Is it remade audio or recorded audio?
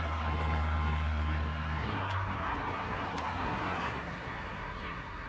remade